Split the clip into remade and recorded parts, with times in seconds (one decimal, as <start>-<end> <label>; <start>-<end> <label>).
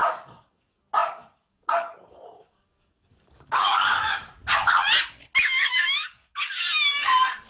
0.0-4.4 remade; 4.4-5.6 recorded; 5.6-7.5 remade